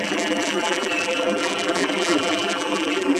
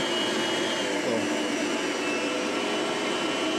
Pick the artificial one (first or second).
first